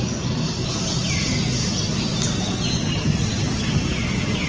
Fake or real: real